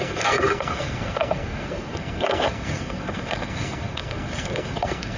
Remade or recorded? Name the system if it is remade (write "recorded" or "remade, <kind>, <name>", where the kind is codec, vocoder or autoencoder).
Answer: remade, codec, SNAC